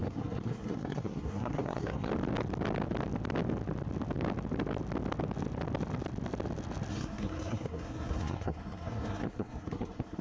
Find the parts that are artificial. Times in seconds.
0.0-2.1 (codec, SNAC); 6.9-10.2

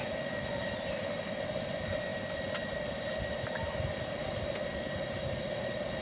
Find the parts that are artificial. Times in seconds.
none

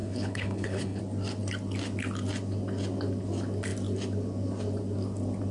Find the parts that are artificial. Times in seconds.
0.0-1.0 (codec, HILCodec)

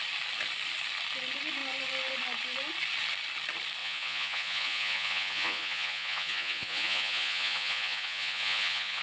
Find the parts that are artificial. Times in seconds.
3.8-9.0 (vocoder, Vocos)

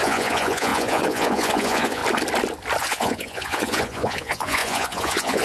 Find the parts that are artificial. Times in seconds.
0.0-2.0 (vocoder, Vocos); 2.8-5.4

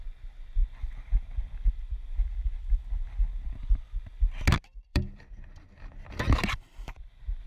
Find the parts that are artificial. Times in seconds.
4.9-6.6 (vocoder, BigVGAN v2)

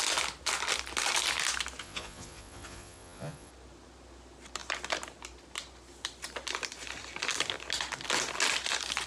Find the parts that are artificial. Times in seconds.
1.8-3.5 (vocoder, Vocos)

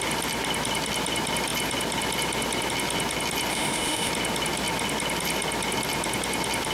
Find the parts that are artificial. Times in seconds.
3.5-4.1 (autoencoder, DAC-VAE)